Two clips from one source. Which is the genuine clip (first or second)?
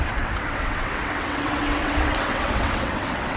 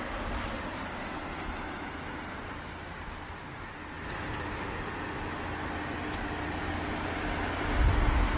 second